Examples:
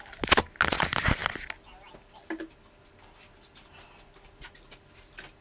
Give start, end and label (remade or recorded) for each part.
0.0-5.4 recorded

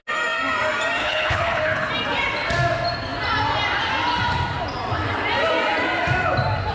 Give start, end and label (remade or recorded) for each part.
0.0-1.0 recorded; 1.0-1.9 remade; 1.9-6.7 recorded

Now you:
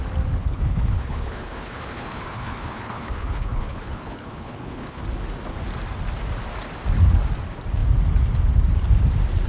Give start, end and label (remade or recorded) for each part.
0.0-0.4 recorded; 0.4-5.0 remade; 5.0-9.5 recorded

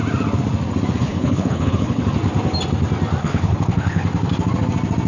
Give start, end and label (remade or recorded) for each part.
0.0-1.1 recorded; 1.1-2.0 remade; 2.0-3.2 recorded; 3.2-4.0 remade; 4.0-5.1 recorded

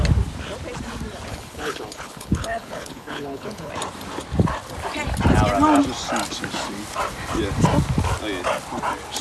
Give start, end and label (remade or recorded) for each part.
0.0-1.3 recorded; 1.3-3.7 remade; 3.7-9.2 recorded

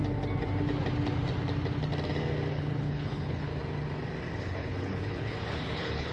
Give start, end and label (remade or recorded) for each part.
0.0-2.5 recorded; 2.5-3.5 remade; 3.5-4.4 recorded; 4.4-6.1 remade

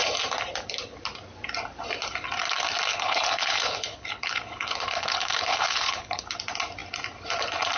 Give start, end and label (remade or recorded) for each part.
0.0-2.9 recorded; 2.9-6.2 remade; 6.2-7.8 recorded